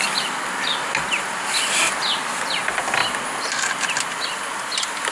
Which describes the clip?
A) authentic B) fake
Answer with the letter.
A